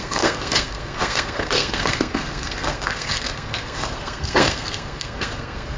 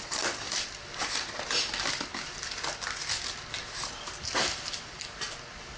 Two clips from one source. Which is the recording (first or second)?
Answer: second